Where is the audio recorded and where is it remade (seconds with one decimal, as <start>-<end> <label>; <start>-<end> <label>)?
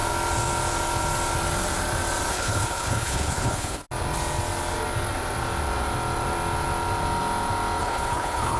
0.0-2.3 recorded; 2.3-3.8 remade; 3.8-7.8 recorded; 7.8-8.6 remade